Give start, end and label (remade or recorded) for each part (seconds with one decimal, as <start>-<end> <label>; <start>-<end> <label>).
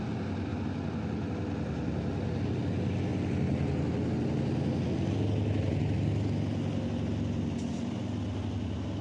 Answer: 0.0-9.0 recorded